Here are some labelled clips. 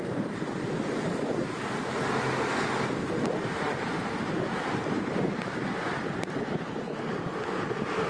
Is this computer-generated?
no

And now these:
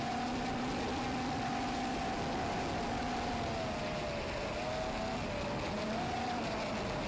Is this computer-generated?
no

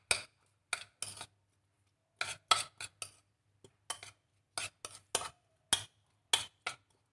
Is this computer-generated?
no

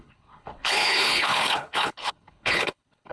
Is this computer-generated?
yes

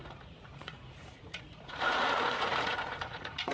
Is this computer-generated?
yes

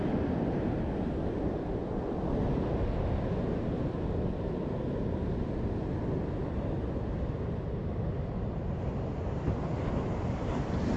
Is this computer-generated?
no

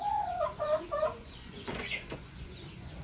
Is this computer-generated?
yes